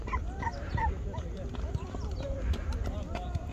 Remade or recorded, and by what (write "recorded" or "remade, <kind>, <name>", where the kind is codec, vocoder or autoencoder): recorded